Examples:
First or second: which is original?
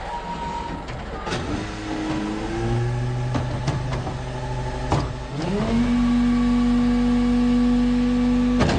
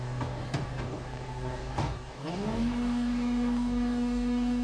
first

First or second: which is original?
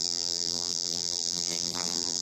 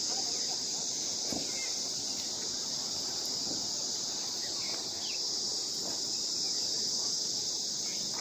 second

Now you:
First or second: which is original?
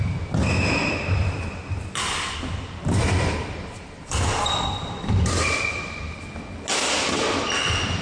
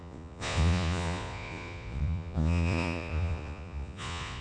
first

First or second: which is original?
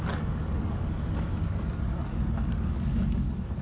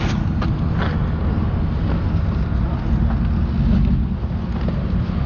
second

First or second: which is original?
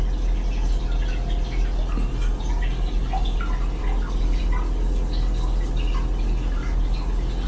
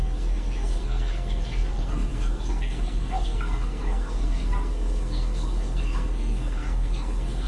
first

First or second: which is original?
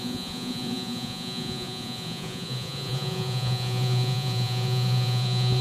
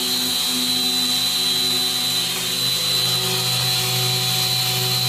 second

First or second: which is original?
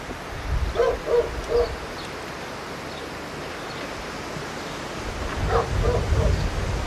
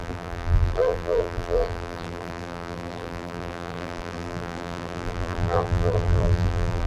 first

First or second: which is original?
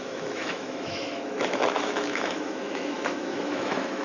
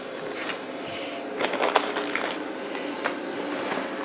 second